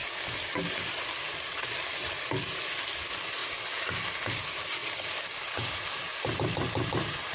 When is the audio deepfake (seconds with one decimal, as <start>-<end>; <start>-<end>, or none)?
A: none